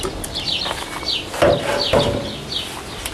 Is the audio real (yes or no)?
yes